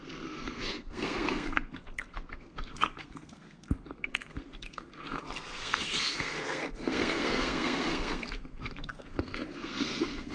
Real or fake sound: fake